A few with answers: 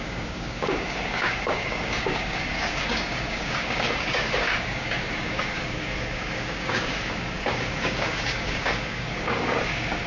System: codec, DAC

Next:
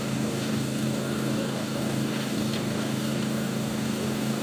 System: codec, DAC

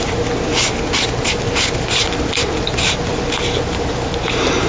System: none